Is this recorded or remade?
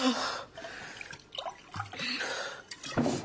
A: recorded